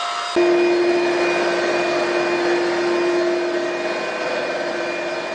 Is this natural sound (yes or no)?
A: yes